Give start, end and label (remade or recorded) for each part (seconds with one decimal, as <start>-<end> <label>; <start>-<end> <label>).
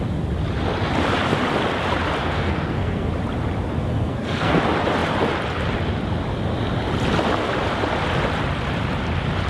0.0-2.2 recorded; 2.2-3.1 remade; 3.1-3.8 recorded; 3.8-4.6 remade; 4.6-9.5 recorded